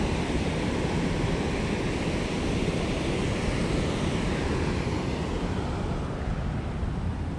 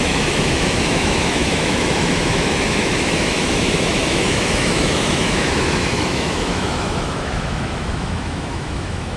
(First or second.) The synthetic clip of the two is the second